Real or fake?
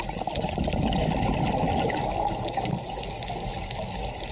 real